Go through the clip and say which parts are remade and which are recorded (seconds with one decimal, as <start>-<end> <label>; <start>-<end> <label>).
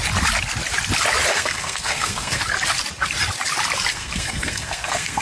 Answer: 0.0-1.3 recorded; 1.3-2.4 remade; 2.4-3.9 recorded; 3.9-5.2 remade